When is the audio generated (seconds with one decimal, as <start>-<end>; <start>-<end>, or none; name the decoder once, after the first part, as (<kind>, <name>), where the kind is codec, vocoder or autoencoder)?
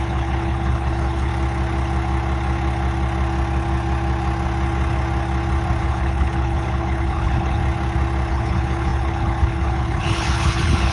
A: 0.0-1.3 (codec, HILCodec); 5.8-7.6; 8.3-10.9